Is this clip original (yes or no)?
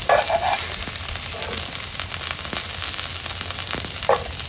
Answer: yes